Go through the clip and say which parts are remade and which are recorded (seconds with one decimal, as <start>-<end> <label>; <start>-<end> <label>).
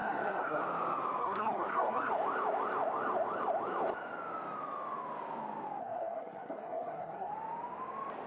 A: 0.0-0.6 remade; 0.6-1.2 recorded; 1.2-2.1 remade; 2.1-5.8 recorded; 5.8-7.3 remade; 7.3-8.3 recorded